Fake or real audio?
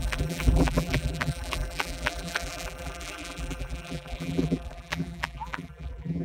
fake